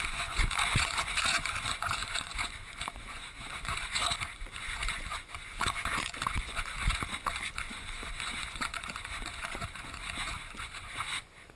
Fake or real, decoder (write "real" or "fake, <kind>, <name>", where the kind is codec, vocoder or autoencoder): fake, vocoder, Vocos